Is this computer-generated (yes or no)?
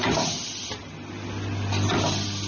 no